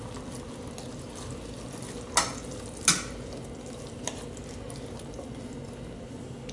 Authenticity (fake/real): real